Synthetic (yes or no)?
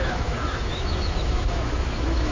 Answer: yes